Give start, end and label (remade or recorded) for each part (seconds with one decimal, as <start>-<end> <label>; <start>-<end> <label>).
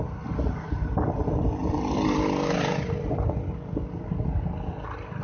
0.0-5.2 recorded